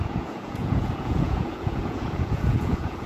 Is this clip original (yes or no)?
no